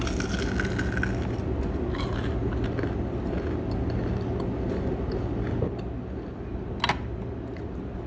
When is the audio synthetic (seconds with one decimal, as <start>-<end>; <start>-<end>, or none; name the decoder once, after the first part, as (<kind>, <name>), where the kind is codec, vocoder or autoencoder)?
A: none